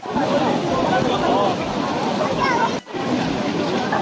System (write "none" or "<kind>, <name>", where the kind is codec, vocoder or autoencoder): none